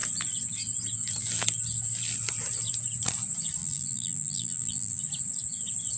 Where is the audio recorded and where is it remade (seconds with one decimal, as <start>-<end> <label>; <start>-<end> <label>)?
0.0-3.6 recorded; 3.6-5.0 remade; 5.0-6.0 recorded